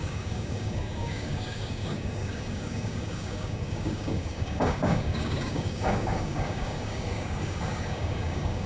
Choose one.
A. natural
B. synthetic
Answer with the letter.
B